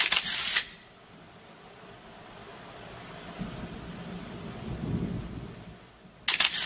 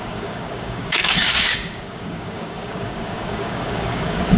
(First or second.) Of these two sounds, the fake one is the second